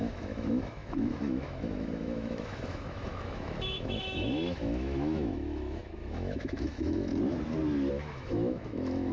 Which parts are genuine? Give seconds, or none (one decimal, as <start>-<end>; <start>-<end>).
7.1-7.9